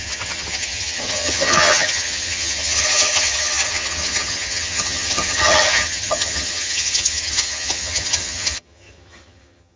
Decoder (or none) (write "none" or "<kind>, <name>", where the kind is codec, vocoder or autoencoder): vocoder, HiFi-GAN